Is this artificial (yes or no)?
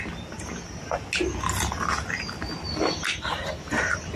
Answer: no